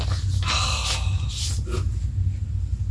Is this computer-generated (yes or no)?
no